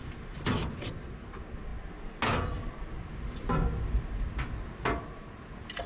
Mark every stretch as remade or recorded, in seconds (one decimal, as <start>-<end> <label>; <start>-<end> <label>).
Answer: 0.0-5.9 recorded